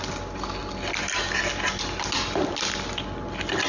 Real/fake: real